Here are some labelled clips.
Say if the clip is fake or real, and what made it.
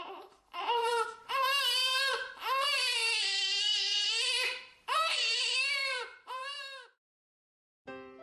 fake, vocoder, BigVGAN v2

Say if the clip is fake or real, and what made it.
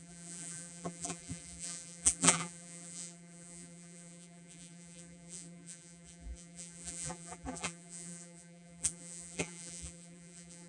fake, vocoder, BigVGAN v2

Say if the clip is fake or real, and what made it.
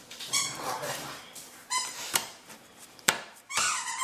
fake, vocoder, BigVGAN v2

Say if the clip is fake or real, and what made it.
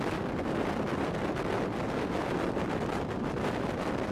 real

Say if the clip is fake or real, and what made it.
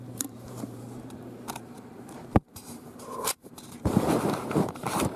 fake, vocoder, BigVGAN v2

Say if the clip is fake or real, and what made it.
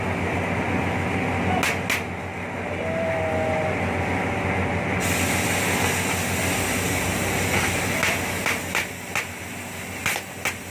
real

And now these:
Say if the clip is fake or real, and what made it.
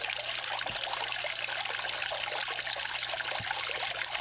real